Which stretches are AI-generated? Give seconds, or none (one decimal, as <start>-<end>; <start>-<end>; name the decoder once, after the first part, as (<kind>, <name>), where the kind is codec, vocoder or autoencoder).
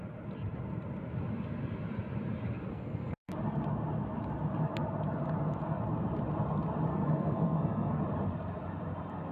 2.7-3.3 (codec, SNAC); 6.9-8.0